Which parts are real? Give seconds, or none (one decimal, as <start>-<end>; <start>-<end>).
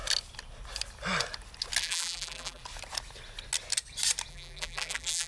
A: 0.0-1.8; 2.6-4.3